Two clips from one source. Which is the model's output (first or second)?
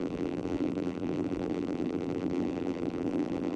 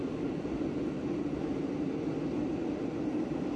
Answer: first